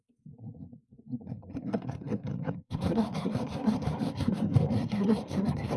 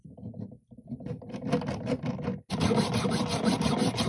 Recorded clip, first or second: second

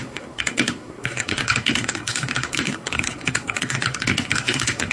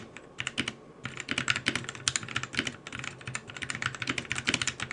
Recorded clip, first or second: second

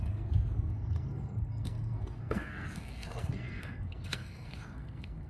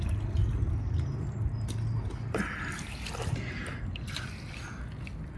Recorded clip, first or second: second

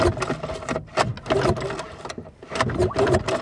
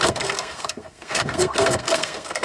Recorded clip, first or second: first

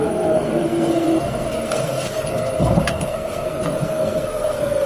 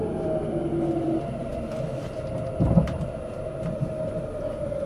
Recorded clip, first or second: second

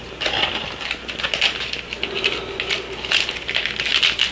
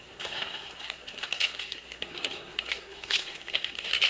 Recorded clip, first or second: first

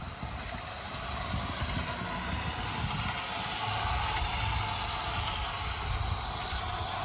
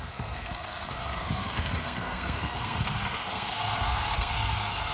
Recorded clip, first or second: first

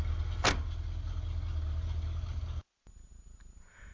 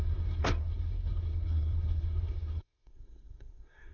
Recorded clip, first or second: first